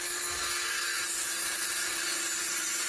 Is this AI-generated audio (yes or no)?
no